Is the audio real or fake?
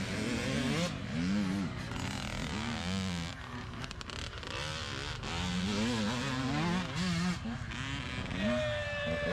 real